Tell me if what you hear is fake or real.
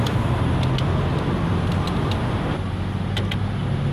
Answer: real